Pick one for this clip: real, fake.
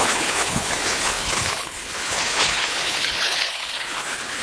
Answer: fake